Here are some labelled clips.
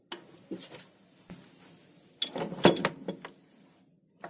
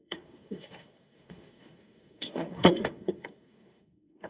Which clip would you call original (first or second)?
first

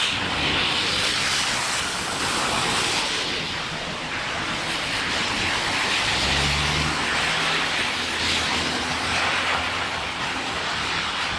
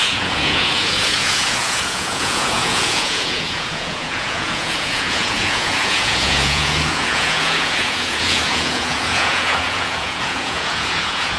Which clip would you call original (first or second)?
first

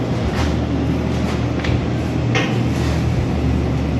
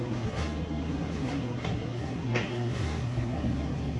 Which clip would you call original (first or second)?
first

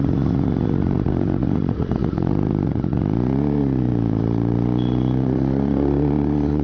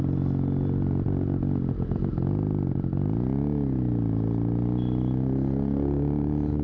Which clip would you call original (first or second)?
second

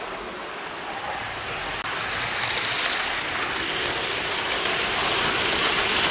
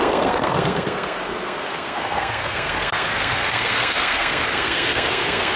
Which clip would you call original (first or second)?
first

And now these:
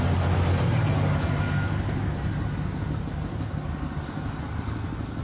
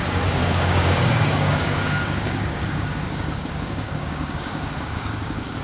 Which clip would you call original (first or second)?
first